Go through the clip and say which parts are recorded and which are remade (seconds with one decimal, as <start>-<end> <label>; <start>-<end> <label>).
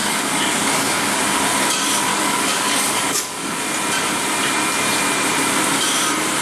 0.0-1.2 remade; 1.2-2.1 recorded; 2.1-3.6 remade; 3.6-6.4 recorded